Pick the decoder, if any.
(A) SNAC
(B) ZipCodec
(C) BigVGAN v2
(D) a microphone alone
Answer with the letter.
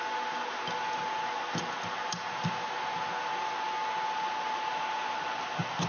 D